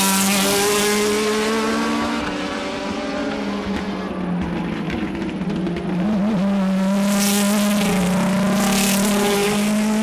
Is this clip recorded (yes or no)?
yes